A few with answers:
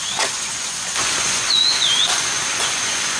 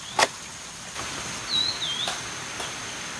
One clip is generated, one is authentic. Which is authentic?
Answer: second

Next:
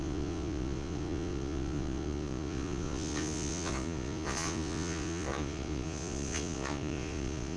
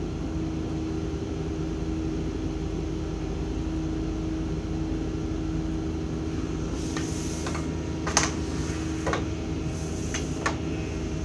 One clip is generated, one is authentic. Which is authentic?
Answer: second